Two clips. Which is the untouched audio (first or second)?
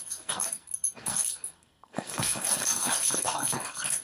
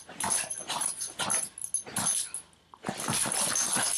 second